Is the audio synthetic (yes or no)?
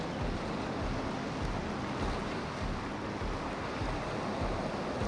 no